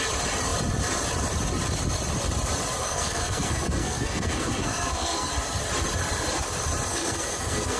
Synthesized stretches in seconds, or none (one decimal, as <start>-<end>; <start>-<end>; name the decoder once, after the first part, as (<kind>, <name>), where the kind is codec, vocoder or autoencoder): 2.8-5.3 (codec, SNAC); 6.9-7.8